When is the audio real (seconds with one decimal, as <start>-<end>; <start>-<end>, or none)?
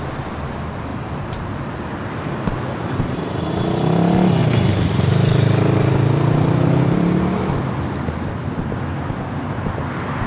0.0-0.9; 2.1-10.3